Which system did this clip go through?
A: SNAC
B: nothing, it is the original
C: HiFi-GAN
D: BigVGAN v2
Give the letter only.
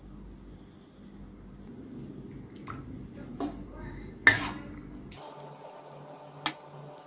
B